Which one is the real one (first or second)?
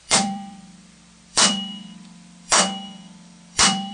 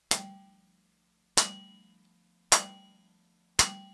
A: second